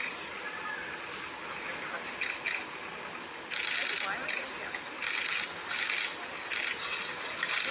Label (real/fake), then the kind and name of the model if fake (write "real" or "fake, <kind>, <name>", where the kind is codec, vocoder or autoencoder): real